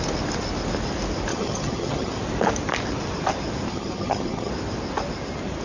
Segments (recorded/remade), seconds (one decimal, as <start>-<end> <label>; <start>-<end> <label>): 0.0-1.3 recorded; 1.3-2.1 remade; 2.1-3.7 recorded; 3.7-4.5 remade; 4.5-5.6 recorded